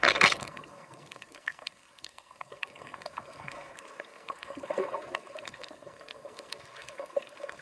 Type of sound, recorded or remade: remade